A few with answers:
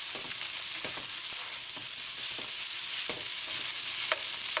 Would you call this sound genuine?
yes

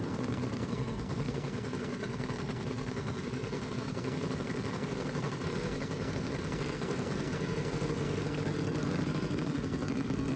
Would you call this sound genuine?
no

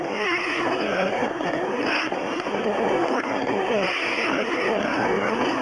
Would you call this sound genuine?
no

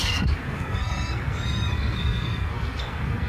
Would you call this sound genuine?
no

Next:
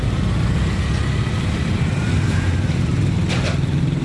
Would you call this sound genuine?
yes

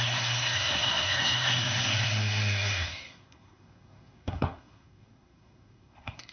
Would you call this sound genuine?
no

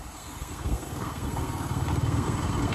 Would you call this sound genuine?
no